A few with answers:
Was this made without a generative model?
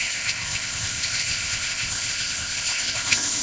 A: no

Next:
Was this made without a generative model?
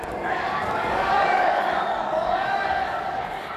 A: no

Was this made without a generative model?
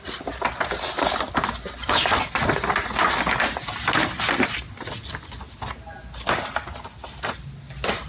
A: yes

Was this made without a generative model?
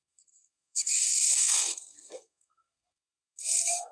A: no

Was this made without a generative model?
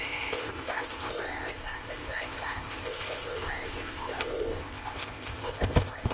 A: no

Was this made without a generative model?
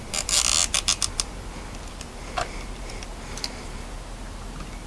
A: yes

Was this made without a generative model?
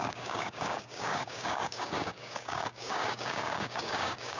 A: no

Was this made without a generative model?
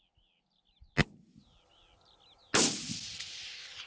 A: yes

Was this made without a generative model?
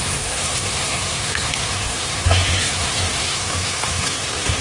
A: no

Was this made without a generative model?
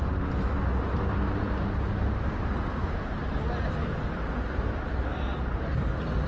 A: yes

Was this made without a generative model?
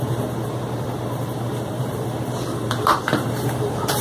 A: no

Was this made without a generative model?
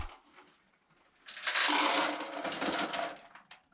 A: yes